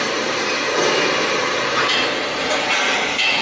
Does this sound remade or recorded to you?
recorded